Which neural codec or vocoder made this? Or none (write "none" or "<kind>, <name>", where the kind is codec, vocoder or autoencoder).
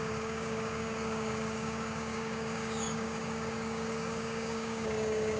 codec, DAC